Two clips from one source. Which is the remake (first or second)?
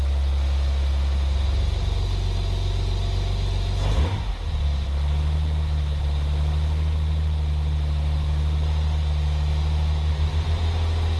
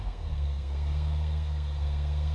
second